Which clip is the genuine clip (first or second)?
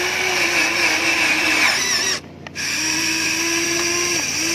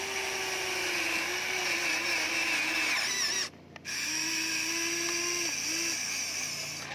second